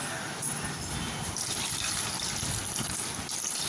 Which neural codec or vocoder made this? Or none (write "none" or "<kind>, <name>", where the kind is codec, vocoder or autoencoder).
none